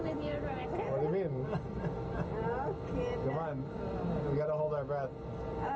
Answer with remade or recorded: recorded